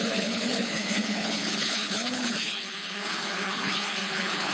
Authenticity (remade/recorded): remade